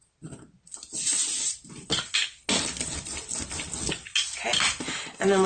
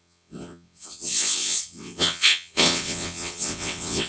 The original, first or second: first